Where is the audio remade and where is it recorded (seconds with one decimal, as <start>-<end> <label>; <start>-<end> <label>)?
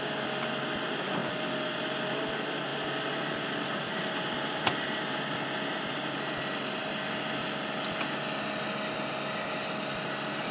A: 0.0-10.5 recorded